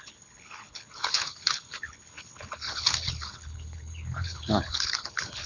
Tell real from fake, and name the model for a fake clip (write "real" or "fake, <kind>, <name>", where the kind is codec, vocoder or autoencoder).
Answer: fake, codec, HILCodec